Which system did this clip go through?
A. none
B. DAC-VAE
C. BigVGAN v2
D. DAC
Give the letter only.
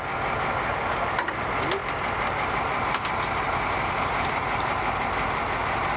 A